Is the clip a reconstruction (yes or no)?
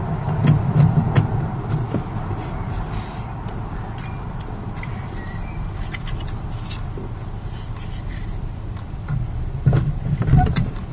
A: no